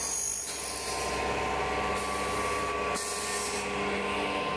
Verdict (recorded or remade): recorded